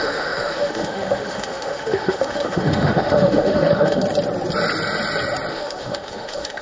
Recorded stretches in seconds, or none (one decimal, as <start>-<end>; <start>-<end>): 4.0-5.5